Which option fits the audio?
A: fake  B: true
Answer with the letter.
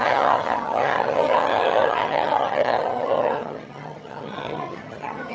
A